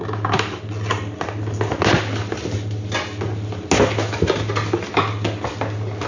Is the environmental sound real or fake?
real